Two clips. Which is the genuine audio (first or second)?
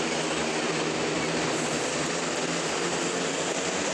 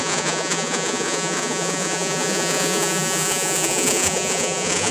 first